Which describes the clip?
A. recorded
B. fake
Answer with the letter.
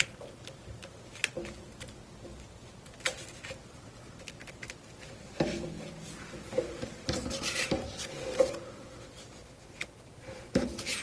A